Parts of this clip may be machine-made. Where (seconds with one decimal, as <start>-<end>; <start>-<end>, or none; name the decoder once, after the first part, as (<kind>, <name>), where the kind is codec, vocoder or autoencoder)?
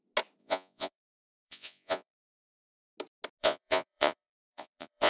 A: 0.4-2.7 (vocoder, Vocos); 3.4-5.1